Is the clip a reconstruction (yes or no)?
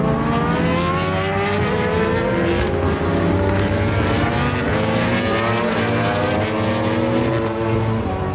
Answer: no